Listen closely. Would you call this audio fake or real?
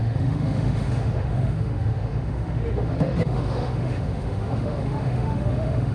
fake